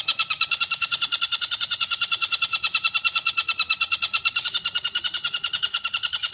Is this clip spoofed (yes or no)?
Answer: yes